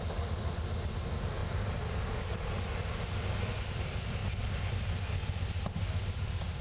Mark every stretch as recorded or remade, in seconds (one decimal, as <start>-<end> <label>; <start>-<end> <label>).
0.0-1.4 recorded; 1.4-2.9 remade; 2.9-4.2 recorded; 4.2-4.7 remade; 4.7-6.6 recorded